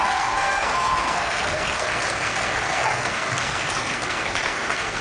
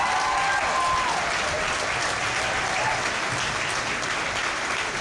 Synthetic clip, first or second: first